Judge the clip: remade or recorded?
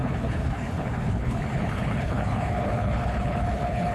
remade